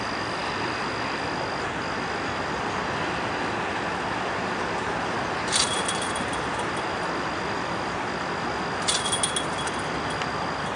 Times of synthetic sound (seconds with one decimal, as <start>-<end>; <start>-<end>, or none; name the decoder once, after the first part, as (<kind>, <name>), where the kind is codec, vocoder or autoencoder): none